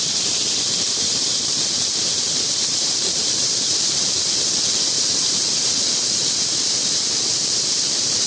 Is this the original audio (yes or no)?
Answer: no